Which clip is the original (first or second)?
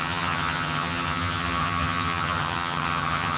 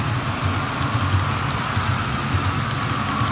second